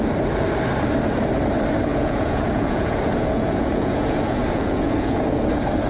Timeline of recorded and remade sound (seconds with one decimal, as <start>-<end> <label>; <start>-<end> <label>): 0.0-1.9 recorded; 1.9-5.4 remade; 5.4-5.9 recorded